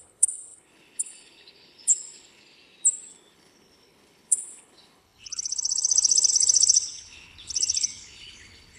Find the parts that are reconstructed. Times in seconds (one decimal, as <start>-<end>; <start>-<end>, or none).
0.0-2.4; 3.1-8.8